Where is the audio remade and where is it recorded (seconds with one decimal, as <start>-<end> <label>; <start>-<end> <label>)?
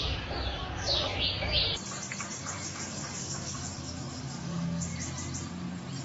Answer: 0.0-1.6 remade; 1.6-2.3 recorded; 2.3-4.9 remade; 4.9-6.0 recorded